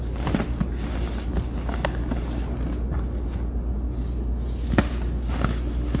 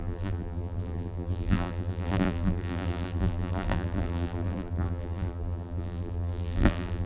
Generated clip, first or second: second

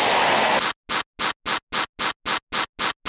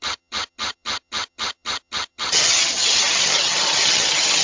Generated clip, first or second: second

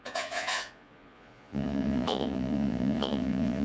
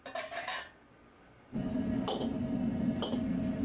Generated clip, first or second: first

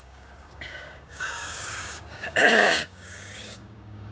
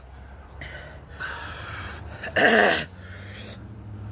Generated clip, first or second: first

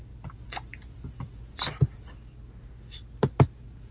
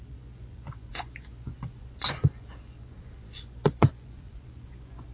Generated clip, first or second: second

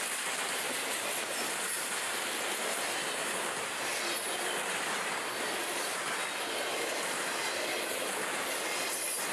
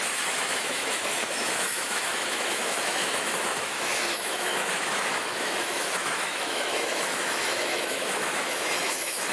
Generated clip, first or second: second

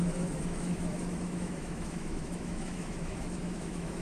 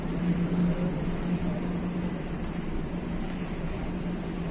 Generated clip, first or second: first